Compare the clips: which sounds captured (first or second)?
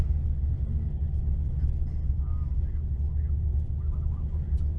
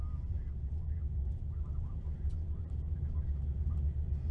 first